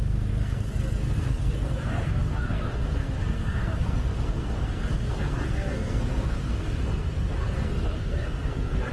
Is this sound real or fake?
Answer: fake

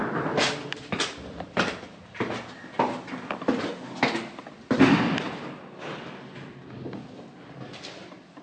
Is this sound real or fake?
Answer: real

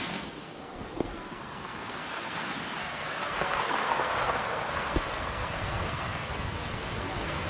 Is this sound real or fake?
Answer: fake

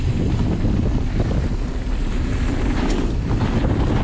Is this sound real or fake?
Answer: real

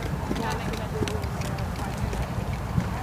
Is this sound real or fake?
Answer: real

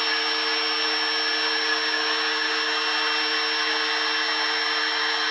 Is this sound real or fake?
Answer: real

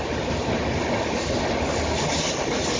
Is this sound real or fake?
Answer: real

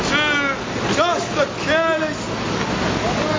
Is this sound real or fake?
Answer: real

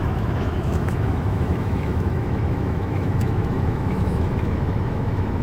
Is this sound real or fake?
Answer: fake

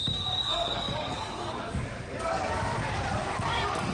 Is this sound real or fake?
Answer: fake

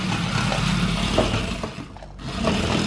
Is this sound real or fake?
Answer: real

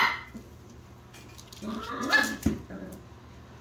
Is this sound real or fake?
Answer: real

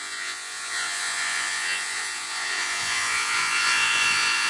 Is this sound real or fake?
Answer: fake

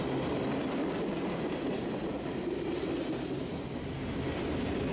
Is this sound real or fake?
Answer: real